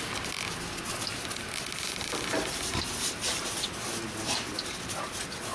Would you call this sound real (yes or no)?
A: yes